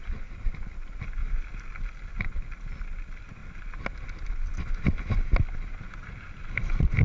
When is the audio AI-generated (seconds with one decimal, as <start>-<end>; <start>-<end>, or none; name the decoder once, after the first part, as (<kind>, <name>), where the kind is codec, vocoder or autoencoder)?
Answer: 1.2-2.2 (vocoder, BigVGAN v2)